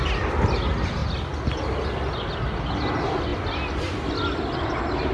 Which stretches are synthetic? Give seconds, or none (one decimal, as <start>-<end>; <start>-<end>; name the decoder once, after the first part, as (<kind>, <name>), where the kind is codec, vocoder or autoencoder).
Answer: none